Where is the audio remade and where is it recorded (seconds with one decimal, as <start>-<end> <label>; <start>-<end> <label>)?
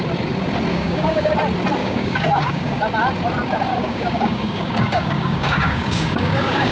0.0-0.7 recorded; 0.7-1.3 remade; 1.3-1.8 recorded; 1.8-2.8 remade; 2.8-3.7 recorded; 3.7-6.7 remade